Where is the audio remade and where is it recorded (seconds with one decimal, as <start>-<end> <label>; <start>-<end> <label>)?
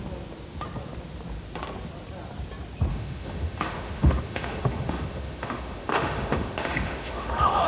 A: 0.0-2.9 recorded; 2.9-7.7 remade